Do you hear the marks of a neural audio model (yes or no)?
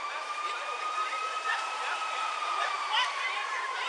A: yes